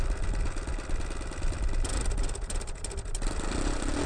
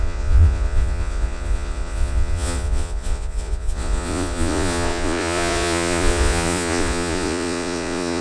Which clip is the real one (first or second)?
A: first